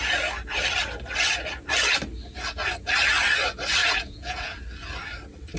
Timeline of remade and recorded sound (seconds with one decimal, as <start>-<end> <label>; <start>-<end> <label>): 0.0-3.8 recorded; 3.8-4.6 remade; 4.6-5.6 recorded